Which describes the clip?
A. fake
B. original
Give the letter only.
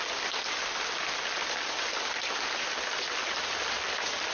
B